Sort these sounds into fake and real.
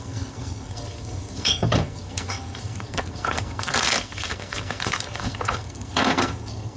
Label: fake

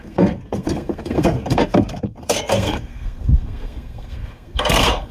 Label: fake